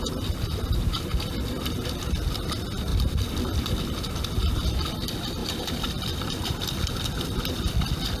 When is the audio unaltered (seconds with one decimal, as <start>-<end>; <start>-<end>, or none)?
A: 0.0-2.9; 3.8-5.4; 6.9-8.2